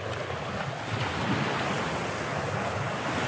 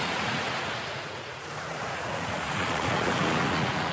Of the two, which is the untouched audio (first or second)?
first